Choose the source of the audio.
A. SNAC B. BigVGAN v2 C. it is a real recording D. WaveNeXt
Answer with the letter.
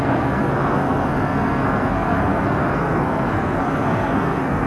A